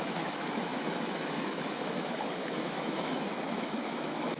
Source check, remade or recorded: remade